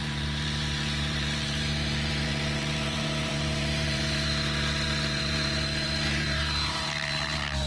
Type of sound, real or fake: fake